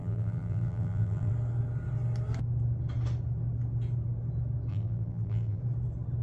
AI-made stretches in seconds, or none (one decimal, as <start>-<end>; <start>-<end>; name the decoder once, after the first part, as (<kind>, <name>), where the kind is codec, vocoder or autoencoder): 0.0-1.3 (vocoder, BigVGAN v2); 4.7-5.6